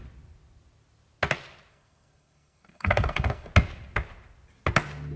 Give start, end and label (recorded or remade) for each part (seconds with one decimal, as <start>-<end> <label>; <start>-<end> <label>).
0.0-1.7 recorded; 1.7-3.5 remade; 3.5-5.2 recorded